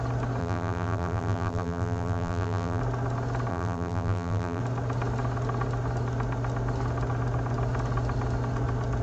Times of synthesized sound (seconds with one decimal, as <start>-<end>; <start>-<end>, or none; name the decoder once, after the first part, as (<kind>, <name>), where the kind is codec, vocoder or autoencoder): 0.4-2.8 (vocoder, BigVGAN v2); 3.5-4.6